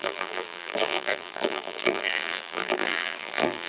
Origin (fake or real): fake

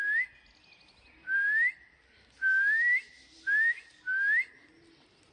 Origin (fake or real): real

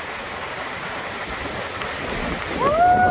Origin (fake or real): real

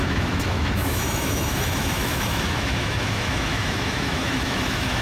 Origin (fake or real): fake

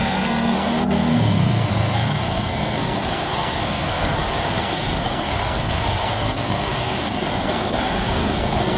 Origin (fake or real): fake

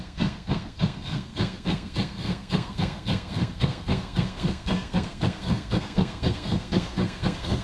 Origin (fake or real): fake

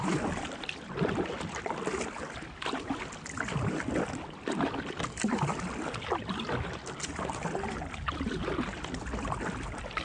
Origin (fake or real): real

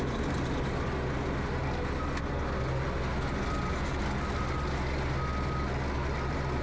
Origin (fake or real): real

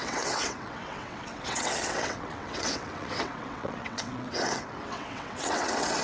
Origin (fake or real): fake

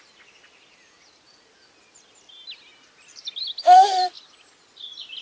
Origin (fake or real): fake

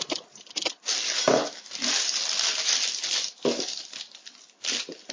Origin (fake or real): real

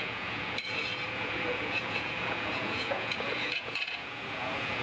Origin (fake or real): fake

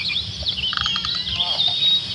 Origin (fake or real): real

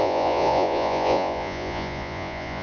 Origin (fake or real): fake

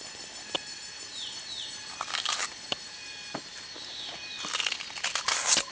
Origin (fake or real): real